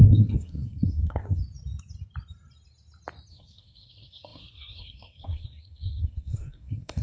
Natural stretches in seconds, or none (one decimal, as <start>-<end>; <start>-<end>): 1.4-3.3